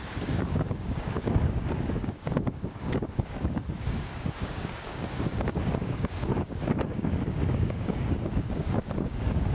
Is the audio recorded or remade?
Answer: remade